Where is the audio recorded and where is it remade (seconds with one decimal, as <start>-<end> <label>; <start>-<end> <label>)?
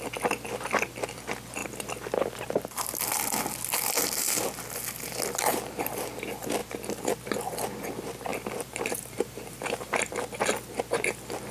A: 0.0-8.3 recorded; 8.3-10.1 remade; 10.1-11.5 recorded